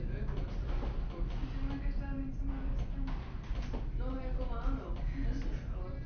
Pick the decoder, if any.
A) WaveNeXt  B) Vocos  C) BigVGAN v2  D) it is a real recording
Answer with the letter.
D